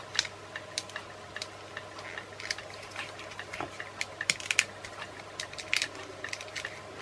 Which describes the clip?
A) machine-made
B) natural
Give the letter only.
B